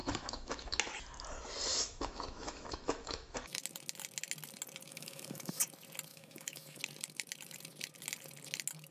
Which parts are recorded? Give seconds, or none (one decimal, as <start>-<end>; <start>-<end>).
0.8-1.7; 3.5-4.9; 5.6-6.1; 6.8-8.9